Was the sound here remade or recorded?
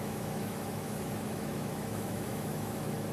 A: remade